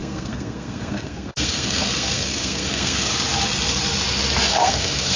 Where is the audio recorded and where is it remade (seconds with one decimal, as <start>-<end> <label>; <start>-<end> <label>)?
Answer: 0.0-3.1 remade; 3.1-4.5 recorded; 4.5-5.2 remade